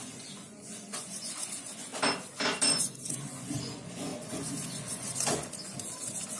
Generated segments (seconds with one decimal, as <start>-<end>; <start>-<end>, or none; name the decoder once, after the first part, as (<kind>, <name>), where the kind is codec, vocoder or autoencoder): 0.0-1.9 (vocoder, Vocos); 2.7-6.4

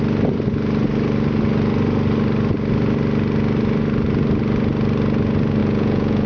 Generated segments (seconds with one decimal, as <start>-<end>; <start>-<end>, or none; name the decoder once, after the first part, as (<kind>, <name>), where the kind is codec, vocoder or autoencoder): 5.6-6.3 (vocoder, Vocos)

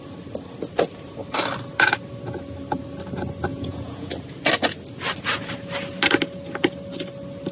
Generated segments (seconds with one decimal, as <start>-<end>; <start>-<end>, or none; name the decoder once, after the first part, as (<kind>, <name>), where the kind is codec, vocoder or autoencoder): 3.5-4.1 (vocoder, Vocos)

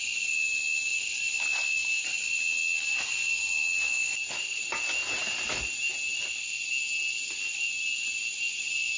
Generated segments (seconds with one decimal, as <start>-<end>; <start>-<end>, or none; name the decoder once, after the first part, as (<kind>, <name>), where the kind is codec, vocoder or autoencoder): none